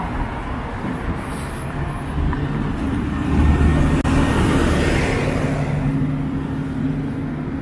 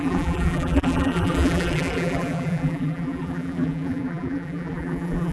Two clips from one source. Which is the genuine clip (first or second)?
first